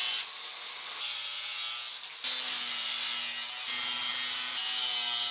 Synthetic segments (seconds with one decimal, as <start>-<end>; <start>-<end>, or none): none